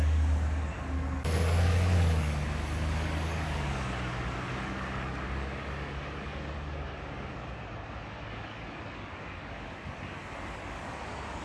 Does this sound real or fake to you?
fake